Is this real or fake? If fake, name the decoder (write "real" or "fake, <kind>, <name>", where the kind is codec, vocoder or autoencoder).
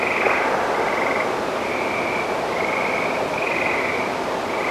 real